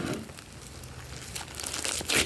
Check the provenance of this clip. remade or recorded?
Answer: recorded